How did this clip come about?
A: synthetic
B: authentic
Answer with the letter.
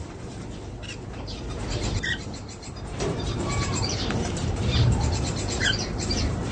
A